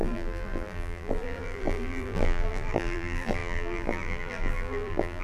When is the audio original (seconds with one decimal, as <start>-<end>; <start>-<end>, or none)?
none